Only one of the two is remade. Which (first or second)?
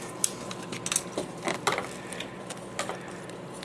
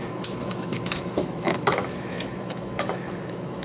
second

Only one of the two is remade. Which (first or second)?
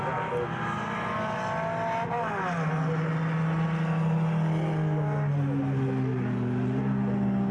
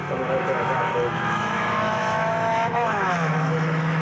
second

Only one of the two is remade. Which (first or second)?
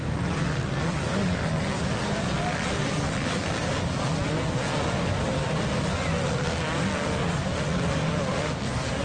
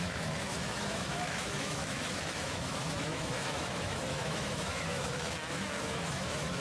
second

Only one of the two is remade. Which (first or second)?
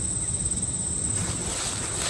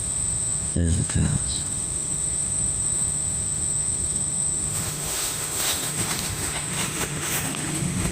second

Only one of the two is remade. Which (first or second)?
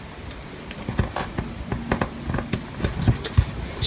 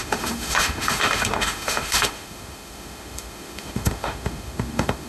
second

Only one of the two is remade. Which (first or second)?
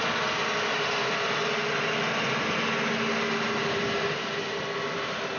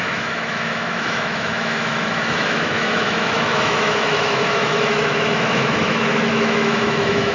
second